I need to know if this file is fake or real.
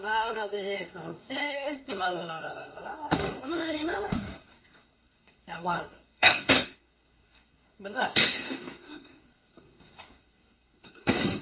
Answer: fake